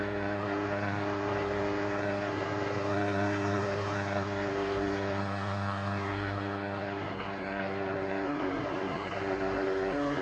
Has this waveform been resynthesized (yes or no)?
yes